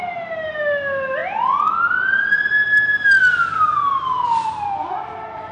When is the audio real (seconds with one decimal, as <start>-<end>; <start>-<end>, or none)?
0.0-5.5